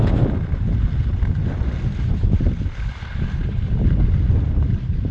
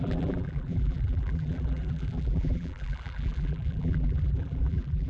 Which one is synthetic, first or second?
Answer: second